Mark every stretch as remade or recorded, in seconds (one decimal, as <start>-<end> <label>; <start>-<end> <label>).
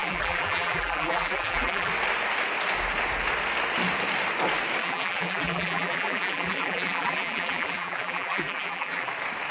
0.0-1.9 remade; 1.9-4.8 recorded; 4.8-9.1 remade; 9.1-9.5 recorded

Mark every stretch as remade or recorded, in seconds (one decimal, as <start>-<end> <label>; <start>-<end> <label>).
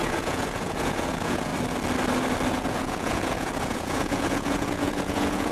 0.0-1.5 remade; 1.5-2.5 recorded; 2.5-5.5 remade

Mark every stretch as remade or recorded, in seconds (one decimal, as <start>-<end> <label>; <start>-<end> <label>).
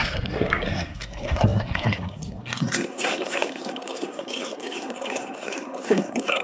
0.0-6.4 remade